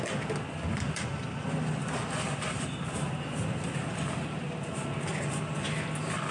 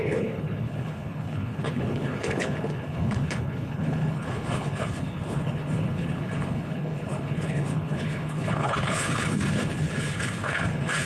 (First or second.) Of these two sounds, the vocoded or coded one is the second